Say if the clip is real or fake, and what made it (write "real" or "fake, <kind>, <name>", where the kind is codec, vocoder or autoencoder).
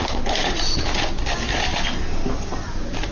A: real